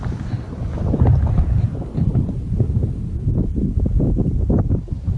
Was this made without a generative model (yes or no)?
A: yes